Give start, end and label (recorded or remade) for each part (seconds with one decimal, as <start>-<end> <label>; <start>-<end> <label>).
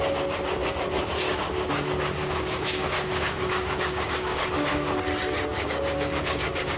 0.0-2.2 recorded; 2.2-4.5 remade; 4.5-5.5 recorded; 5.5-6.8 remade